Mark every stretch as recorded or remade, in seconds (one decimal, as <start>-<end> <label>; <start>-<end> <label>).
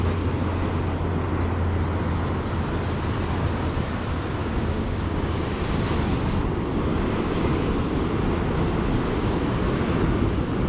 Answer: 0.0-4.4 recorded; 4.4-5.5 remade; 5.5-6.9 recorded; 6.9-7.7 remade; 7.7-10.7 recorded